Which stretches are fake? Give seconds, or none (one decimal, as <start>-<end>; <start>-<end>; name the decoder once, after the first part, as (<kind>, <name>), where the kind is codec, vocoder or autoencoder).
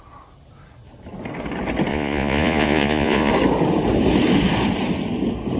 1.9-3.3 (vocoder, Vocos)